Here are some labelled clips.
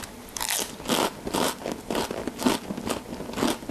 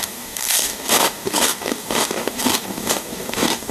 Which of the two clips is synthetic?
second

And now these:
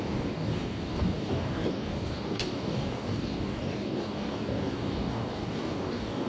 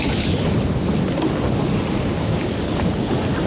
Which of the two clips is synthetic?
first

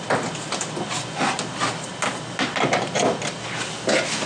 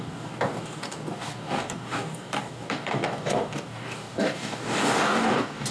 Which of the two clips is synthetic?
second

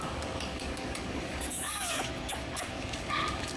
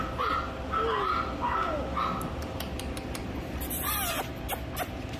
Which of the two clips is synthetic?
first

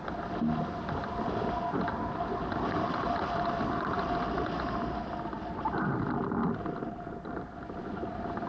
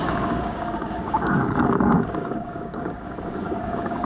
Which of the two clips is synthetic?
second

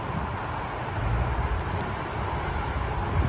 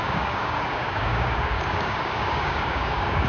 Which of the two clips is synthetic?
second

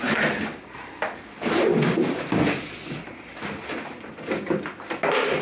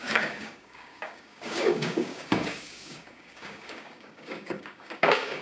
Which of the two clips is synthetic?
second